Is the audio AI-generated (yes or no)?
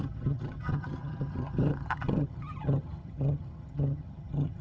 yes